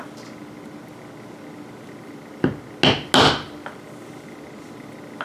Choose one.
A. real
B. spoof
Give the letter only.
A